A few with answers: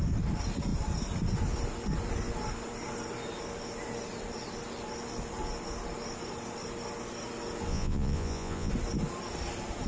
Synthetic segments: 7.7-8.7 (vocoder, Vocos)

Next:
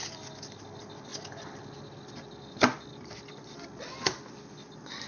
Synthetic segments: none

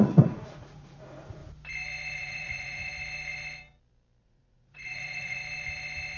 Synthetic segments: 0.0-1.4 (vocoder, Vocos); 2.2-2.9; 4.2-5.4

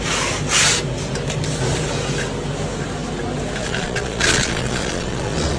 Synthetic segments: 3.6-5.6 (vocoder, Vocos)

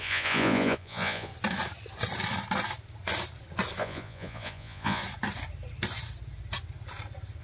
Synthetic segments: 0.0-1.3 (vocoder, Vocos); 3.8-5.0

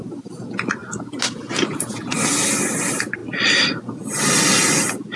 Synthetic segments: none

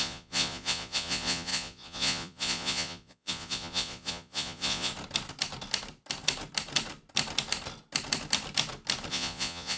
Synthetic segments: 0.0-4.9 (vocoder, Vocos); 9.1-9.8

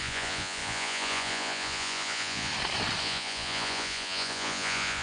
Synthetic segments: 0.0-2.5 (vocoder, Vocos); 3.0-5.0